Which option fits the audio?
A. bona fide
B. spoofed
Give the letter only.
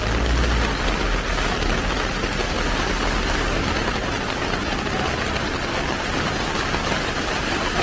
A